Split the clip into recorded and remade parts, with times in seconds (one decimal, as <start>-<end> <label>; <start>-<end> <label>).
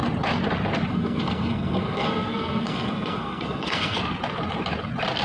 0.0-0.9 recorded; 0.9-4.0 remade; 4.0-5.2 recorded